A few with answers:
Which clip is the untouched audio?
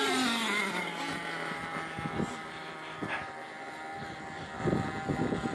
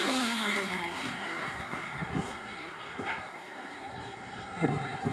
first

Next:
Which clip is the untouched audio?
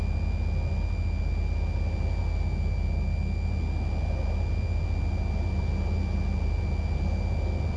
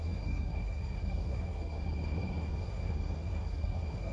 first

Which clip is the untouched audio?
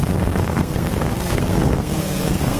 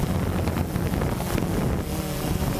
second